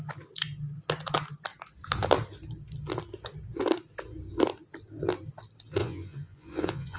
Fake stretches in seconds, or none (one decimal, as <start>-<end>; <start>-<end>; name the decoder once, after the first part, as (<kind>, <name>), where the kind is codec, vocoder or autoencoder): 5.8-7.0 (vocoder, Vocos)